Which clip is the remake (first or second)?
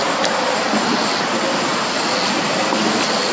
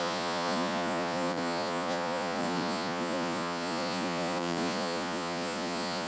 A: second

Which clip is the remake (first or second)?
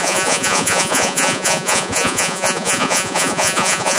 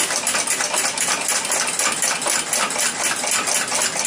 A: first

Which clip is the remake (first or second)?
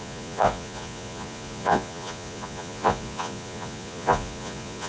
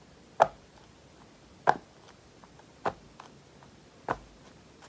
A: first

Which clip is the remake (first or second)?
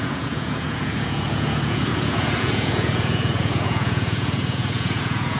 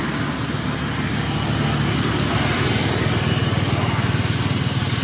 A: first